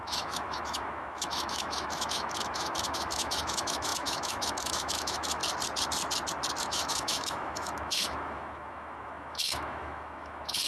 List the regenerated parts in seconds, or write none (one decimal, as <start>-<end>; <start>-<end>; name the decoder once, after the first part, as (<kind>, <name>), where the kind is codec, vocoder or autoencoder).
0.0-5.4 (autoencoder, DAC-VAE); 6.6-10.7